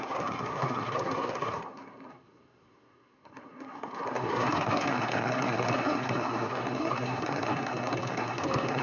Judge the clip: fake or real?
fake